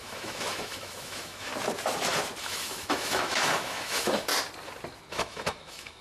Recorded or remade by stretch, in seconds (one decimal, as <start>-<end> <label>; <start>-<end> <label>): 0.0-1.5 remade; 1.5-2.4 recorded; 2.4-4.3 remade; 4.3-5.1 recorded; 5.1-6.0 remade